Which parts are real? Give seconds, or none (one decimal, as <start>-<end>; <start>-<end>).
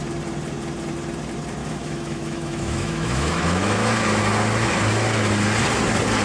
0.0-1.6; 4.2-6.2